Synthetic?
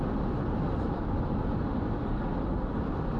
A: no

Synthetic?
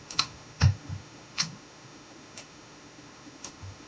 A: yes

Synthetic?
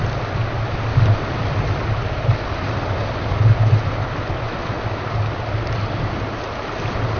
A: no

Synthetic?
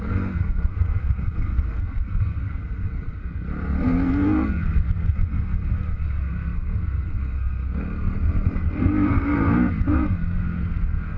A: yes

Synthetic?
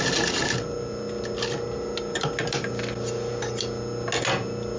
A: no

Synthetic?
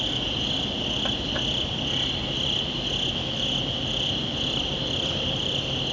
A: no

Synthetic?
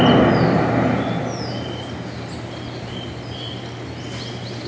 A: no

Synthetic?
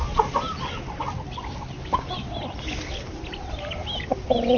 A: no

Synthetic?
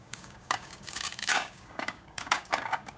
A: yes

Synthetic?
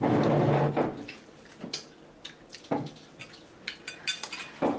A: no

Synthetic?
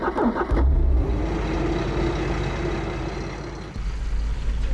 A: no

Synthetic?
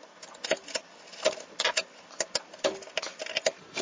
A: no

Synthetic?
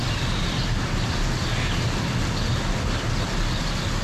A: no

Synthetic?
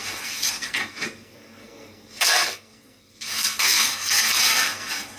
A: yes